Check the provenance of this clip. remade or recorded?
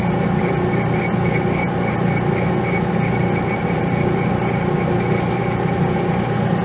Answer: recorded